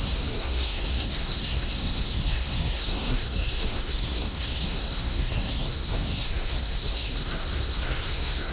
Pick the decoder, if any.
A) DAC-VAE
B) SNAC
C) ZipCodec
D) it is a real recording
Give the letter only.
B